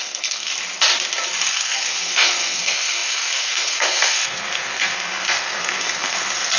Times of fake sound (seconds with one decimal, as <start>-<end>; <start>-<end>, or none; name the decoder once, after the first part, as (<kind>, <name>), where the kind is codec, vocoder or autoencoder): 0.0-0.5 (codec, SNAC); 1.5-6.6